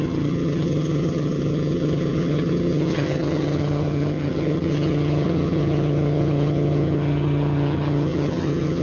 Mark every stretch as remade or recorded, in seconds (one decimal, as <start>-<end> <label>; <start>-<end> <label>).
0.0-8.8 remade